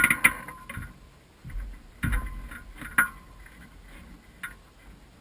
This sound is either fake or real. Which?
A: real